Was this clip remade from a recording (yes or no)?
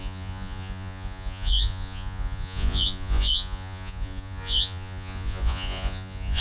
yes